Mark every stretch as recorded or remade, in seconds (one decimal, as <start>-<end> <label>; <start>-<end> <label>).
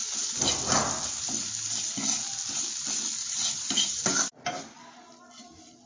0.0-0.5 remade; 0.5-3.2 recorded; 3.2-4.3 remade; 4.3-5.9 recorded